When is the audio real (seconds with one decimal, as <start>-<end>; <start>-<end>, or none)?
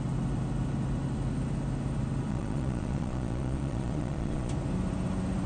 0.0-2.3; 4.5-5.5